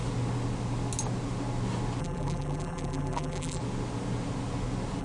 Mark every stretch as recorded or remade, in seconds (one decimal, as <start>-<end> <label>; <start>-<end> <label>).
0.0-2.0 recorded; 2.0-3.6 remade; 3.6-5.0 recorded